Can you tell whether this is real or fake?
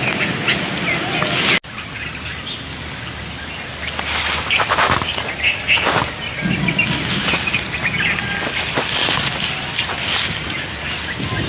real